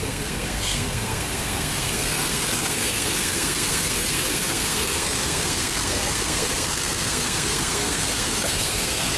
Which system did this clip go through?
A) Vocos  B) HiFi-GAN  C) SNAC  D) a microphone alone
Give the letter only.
C